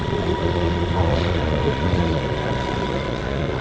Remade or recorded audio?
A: remade